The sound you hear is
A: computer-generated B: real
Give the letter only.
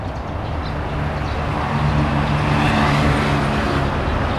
B